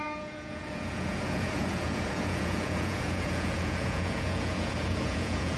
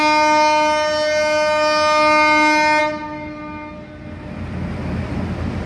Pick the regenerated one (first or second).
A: first